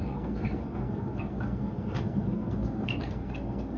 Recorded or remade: remade